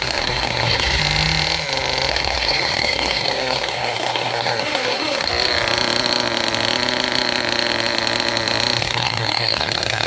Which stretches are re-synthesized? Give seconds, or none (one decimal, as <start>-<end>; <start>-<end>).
0.0-1.0; 2.1-5.3; 8.8-10.1